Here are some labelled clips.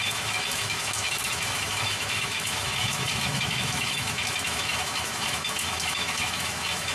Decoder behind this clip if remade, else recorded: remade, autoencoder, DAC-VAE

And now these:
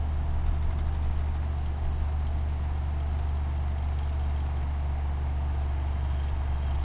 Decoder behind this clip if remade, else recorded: recorded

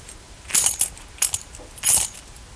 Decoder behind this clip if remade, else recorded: recorded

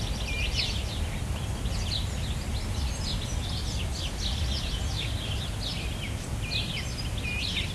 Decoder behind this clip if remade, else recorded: recorded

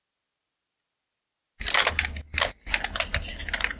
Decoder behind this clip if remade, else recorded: recorded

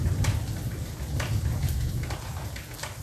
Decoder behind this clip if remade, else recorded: recorded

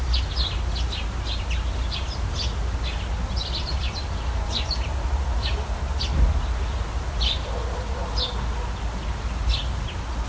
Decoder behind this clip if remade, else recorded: recorded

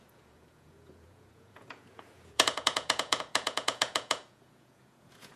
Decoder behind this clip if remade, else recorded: remade, vocoder, Vocos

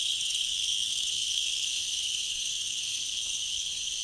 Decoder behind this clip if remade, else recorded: remade, codec, SNAC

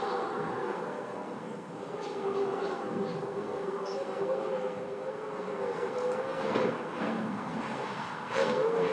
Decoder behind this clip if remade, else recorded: remade, codec, SNAC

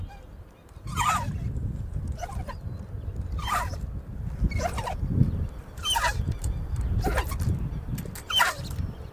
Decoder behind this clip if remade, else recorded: recorded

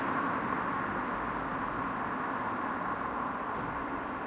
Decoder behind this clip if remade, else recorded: recorded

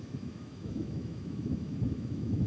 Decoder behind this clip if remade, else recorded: remade, autoencoder, DAC-VAE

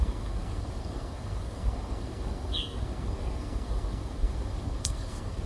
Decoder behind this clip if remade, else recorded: remade, codec, SNAC